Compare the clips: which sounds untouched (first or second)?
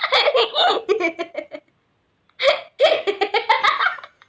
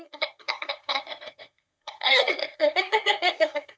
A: first